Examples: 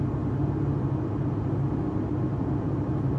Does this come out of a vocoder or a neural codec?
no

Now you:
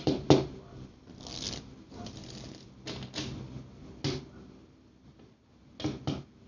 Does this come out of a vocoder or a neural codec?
no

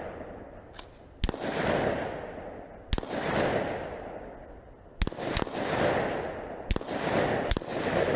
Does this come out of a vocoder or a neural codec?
no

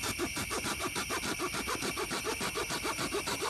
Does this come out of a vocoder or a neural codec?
no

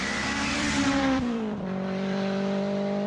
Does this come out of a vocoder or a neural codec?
yes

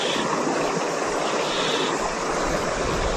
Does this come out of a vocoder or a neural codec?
no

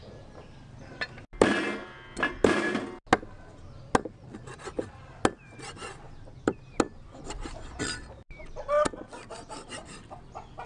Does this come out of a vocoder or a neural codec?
no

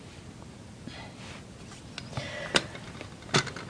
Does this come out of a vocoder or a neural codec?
no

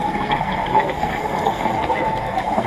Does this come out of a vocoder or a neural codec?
yes